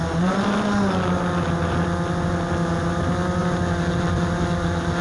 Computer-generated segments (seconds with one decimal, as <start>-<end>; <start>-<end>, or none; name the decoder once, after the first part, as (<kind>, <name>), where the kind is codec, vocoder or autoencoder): none